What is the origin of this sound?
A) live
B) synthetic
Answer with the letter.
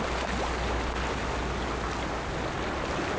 A